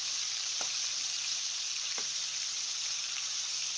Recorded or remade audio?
remade